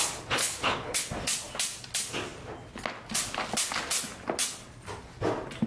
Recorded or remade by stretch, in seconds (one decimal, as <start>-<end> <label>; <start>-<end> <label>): 0.0-0.4 recorded; 0.4-1.1 remade; 1.1-5.7 recorded